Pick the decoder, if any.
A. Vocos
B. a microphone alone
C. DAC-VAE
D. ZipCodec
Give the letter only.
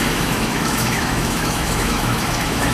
C